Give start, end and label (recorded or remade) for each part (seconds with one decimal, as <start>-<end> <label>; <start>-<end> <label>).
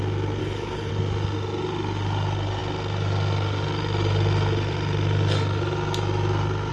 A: 0.0-0.4 recorded; 0.4-0.9 remade; 0.9-6.7 recorded